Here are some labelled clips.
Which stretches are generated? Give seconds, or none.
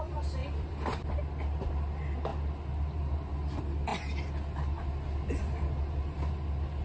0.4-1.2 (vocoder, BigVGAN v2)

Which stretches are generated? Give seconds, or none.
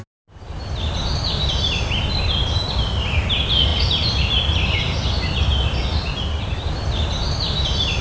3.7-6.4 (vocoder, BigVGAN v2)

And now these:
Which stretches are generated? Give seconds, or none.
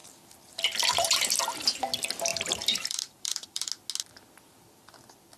2.3-3.7 (vocoder, BigVGAN v2)